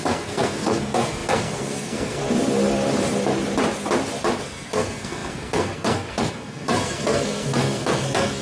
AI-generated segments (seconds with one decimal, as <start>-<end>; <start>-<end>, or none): 0.0-2.2; 4.4-8.4